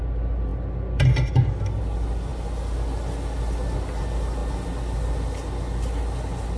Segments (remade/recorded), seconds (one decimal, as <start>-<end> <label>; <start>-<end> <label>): 0.0-6.6 recorded